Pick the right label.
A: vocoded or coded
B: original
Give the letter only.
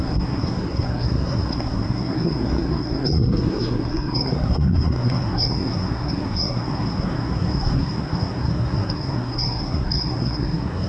A